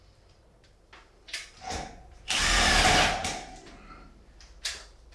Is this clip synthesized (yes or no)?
yes